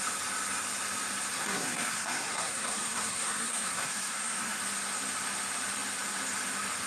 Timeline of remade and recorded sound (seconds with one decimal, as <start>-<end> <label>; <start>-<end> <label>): 0.0-1.3 recorded; 1.3-4.6 remade; 4.6-6.9 recorded